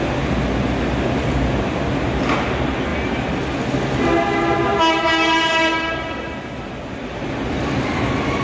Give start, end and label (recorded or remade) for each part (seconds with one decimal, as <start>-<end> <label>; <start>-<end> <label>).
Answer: 0.0-8.4 recorded

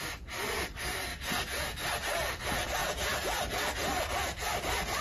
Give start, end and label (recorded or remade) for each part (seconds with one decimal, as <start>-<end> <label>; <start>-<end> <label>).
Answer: 0.0-2.8 recorded; 2.8-4.0 remade; 4.0-5.0 recorded

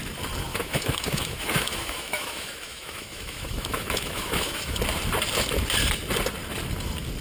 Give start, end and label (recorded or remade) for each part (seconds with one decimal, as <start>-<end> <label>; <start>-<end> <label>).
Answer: 0.0-0.5 recorded; 0.5-4.8 remade; 4.8-7.2 recorded

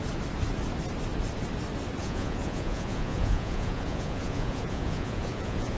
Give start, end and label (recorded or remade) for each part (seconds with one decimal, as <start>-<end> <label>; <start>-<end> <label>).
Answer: 0.0-2.0 recorded; 2.0-5.8 remade